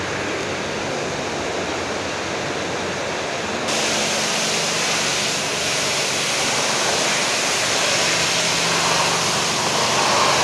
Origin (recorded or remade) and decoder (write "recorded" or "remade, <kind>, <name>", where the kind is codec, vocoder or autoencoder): recorded